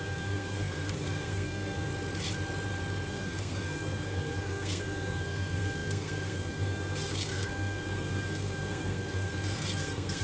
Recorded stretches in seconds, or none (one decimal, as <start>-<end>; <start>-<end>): 1.9-3.1